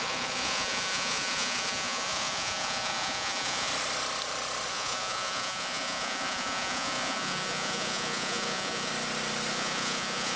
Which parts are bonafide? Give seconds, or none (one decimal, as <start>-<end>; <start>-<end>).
3.7-4.7; 8.9-9.5